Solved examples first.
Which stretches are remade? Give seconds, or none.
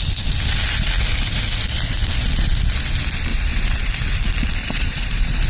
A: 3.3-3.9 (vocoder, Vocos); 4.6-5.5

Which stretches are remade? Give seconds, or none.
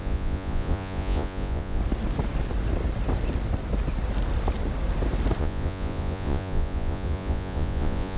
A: 0.0-1.8 (vocoder, Vocos); 5.4-8.2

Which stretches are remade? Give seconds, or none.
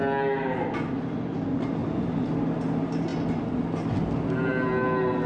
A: 1.8-2.3 (vocoder, BigVGAN v2)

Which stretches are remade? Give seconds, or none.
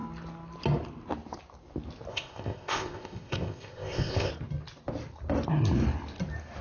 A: 2.1-4.3 (codec, ZipCodec)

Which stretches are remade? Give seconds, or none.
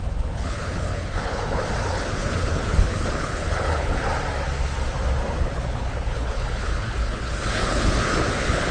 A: 0.0-4.1 (codec, HILCodec); 5.4-8.7